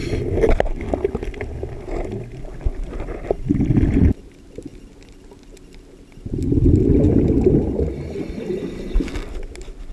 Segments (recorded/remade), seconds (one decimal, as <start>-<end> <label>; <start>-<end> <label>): 0.0-9.9 recorded